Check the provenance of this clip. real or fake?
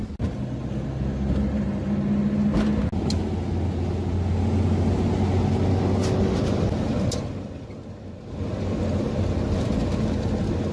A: real